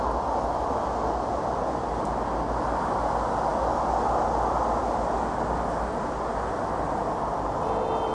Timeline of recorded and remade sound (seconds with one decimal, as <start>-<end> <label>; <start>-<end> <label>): 0.0-8.1 recorded